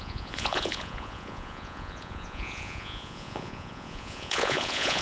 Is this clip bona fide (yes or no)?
no